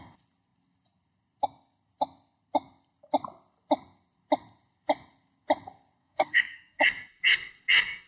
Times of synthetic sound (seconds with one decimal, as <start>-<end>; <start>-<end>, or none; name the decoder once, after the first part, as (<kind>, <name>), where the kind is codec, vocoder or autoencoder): 6.0-6.8 (codec, SNAC)